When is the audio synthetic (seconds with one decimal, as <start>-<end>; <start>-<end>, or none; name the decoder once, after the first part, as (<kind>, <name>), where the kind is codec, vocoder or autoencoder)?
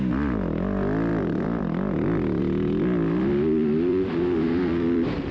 1.1-2.4 (vocoder, BigVGAN v2); 3.9-5.3